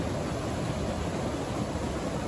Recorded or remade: recorded